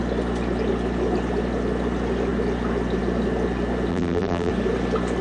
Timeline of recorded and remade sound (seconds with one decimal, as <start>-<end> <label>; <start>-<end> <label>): 0.0-3.9 recorded; 3.9-4.5 remade; 4.5-5.2 recorded